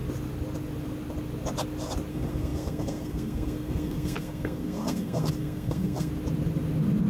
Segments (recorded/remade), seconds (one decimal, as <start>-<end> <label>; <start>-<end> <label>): 0.0-2.1 recorded; 2.1-6.1 remade; 6.1-7.1 recorded